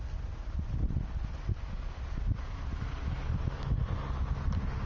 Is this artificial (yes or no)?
no